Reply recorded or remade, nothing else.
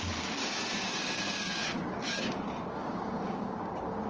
remade